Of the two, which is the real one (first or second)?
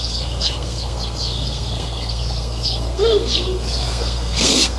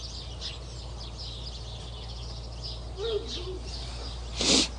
second